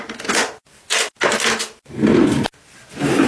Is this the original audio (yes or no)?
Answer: yes